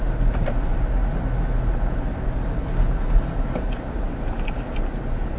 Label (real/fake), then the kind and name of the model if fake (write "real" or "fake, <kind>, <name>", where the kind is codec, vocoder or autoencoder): real